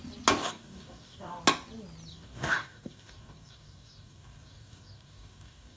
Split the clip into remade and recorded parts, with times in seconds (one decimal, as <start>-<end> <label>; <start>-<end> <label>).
0.0-0.4 recorded; 0.4-1.4 remade; 1.4-2.1 recorded; 2.1-5.8 remade